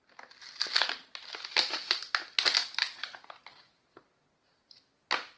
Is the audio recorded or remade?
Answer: recorded